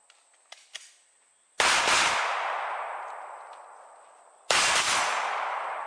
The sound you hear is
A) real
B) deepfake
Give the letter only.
A